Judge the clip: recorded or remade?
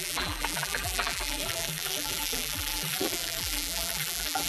remade